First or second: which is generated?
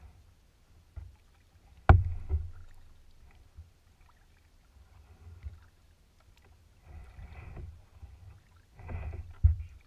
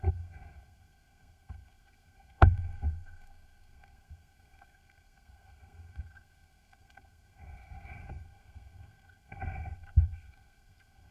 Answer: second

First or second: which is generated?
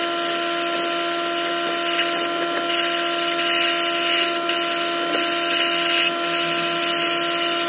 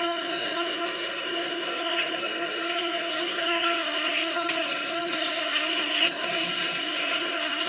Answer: second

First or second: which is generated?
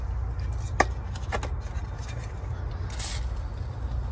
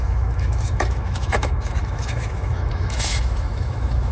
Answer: second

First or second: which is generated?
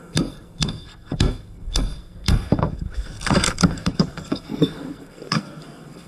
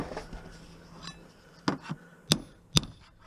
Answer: first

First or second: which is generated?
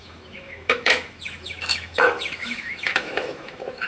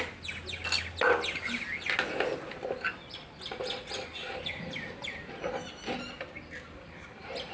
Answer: first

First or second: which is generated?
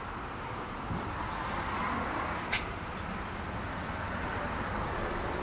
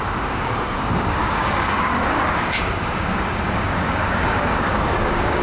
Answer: second